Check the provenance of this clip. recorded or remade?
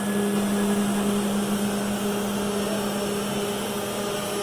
recorded